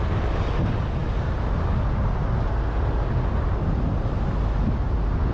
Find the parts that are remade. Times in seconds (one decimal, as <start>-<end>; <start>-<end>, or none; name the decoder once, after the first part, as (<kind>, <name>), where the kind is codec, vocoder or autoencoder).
none